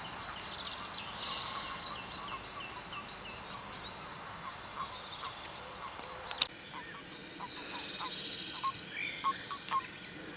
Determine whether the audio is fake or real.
real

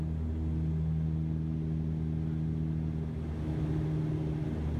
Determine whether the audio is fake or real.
real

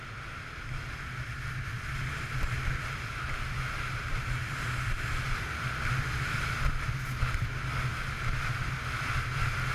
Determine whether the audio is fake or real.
real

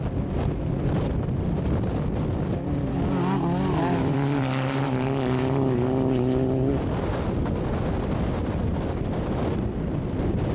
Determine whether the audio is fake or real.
real